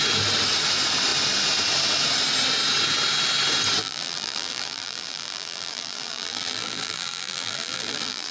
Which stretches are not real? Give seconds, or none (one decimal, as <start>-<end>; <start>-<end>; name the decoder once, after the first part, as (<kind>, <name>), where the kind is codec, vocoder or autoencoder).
3.8-8.3 (vocoder, BigVGAN v2)